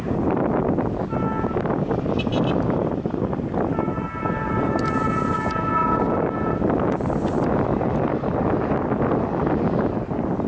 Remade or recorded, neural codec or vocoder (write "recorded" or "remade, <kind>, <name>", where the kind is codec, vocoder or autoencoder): recorded